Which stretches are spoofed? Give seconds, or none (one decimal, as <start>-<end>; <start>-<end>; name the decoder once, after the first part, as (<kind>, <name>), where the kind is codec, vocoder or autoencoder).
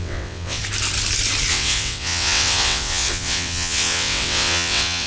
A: 0.0-0.6 (vocoder, WaveNeXt); 1.5-5.1